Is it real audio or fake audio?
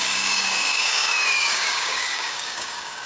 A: fake